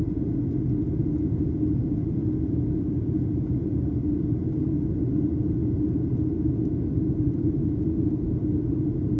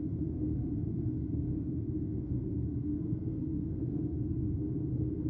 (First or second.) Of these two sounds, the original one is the first